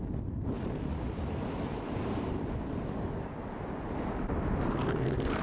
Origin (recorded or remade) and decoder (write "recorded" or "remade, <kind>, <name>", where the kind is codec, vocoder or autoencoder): recorded